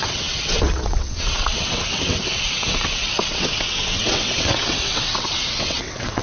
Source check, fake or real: fake